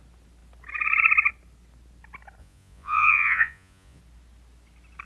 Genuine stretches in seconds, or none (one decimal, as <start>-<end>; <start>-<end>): 0.0-2.4; 4.0-5.1